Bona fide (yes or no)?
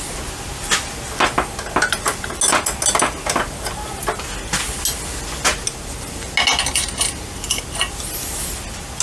yes